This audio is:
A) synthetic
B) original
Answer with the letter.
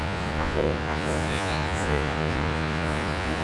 A